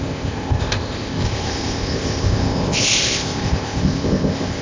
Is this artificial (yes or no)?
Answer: yes